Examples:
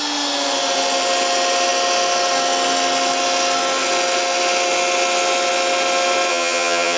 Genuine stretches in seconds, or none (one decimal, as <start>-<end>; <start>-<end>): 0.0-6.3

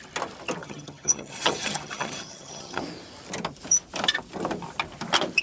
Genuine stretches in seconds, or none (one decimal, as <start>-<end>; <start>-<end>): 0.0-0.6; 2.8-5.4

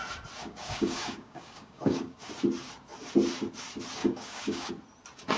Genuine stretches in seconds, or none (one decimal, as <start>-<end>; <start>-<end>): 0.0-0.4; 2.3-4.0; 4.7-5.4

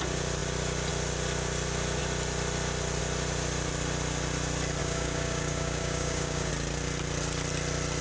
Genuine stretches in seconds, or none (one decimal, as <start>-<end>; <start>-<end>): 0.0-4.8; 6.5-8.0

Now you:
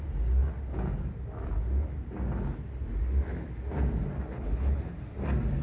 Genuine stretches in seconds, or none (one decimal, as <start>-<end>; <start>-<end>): 0.0-4.3; 4.8-5.6

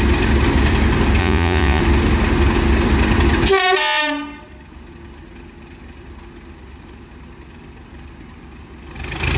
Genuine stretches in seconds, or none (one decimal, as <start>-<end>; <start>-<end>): 0.0-1.2; 1.8-9.4

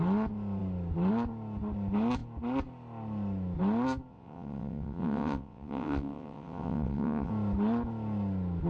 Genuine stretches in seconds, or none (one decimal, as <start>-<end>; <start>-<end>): 0.0-4.1; 7.3-8.7